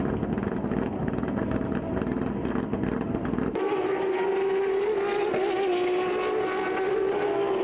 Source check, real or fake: real